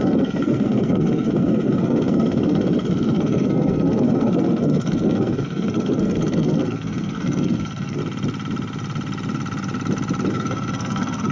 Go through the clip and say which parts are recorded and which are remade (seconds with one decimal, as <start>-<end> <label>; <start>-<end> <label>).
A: 0.0-8.0 remade; 8.0-10.3 recorded; 10.3-11.3 remade